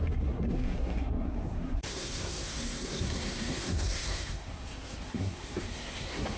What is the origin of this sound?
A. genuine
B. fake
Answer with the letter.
B